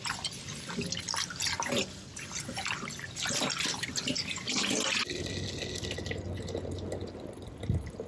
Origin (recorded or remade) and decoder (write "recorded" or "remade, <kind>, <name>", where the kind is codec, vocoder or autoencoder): recorded